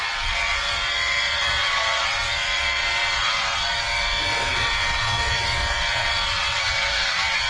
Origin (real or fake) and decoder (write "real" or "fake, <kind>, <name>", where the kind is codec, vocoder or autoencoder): fake, vocoder, WaveNeXt